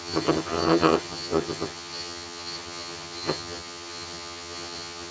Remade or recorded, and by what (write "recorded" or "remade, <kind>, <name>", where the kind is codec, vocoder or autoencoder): remade, vocoder, HiFi-GAN